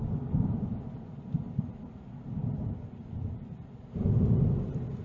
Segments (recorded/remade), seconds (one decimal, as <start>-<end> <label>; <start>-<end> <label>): 0.0-5.0 recorded